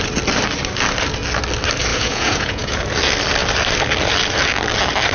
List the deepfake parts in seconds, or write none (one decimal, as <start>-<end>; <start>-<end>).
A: 1.9-2.8